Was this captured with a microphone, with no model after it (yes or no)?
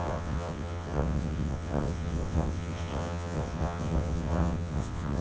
no